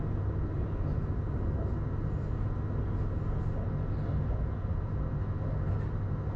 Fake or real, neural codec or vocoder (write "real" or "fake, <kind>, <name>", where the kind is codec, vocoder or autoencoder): real